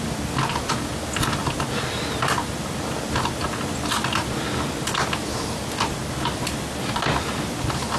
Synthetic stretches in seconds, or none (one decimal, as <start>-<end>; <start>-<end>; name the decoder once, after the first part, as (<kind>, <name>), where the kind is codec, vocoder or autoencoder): none